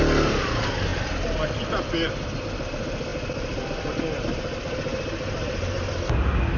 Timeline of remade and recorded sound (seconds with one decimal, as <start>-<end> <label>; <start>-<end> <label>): 0.0-0.9 recorded; 0.9-1.4 remade; 1.4-6.6 recorded